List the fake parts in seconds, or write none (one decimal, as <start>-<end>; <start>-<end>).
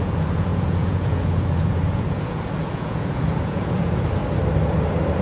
0.0-4.2